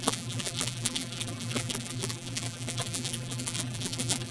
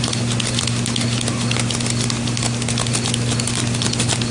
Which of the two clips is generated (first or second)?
first